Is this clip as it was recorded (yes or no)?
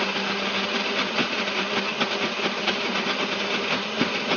yes